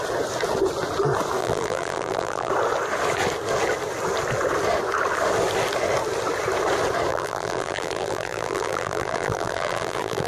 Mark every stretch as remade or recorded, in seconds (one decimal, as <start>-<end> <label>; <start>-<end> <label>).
0.0-1.4 recorded; 1.4-2.5 remade; 2.5-7.1 recorded; 7.1-10.3 remade